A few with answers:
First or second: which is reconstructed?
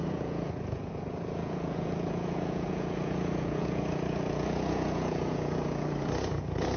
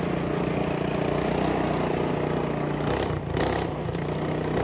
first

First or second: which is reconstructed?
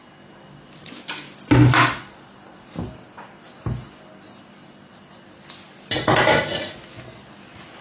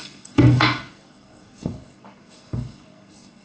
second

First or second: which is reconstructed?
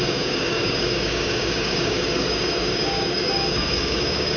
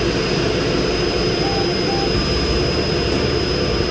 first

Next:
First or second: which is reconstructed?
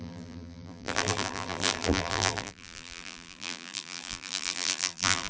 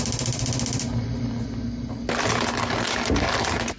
first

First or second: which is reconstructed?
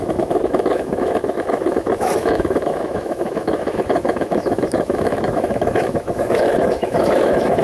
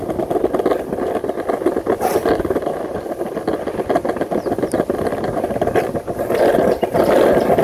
first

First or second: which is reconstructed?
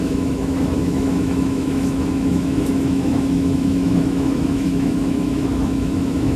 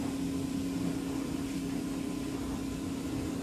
first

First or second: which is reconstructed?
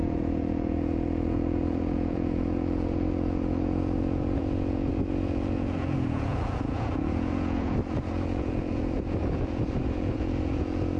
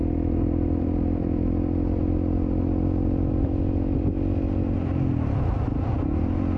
first